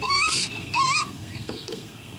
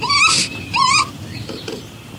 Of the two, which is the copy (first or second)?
first